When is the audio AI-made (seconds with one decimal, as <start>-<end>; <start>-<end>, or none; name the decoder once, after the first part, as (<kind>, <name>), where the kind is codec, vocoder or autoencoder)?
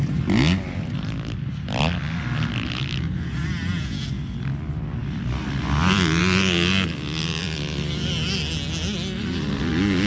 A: none